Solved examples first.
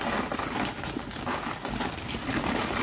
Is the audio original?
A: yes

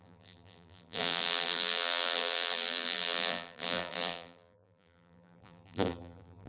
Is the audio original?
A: no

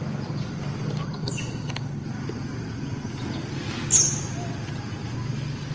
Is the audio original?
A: yes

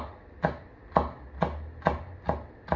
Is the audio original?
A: yes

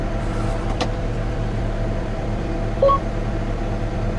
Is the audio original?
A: no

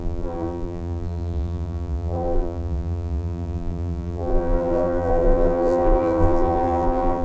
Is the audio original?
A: no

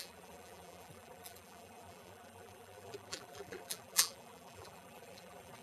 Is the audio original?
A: no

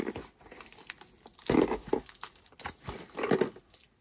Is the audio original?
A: yes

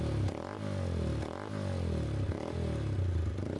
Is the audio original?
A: yes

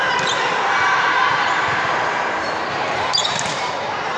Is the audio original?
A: no